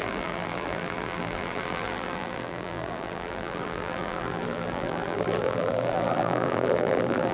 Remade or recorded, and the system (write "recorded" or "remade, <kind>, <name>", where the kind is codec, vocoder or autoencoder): remade, vocoder, BigVGAN v2